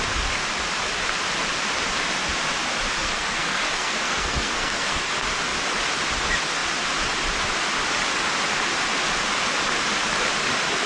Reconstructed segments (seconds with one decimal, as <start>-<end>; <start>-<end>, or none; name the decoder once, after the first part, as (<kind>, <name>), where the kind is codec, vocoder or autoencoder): 3.0-5.1 (codec, SNAC)